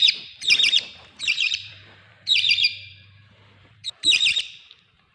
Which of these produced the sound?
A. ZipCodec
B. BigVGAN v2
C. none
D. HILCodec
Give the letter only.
B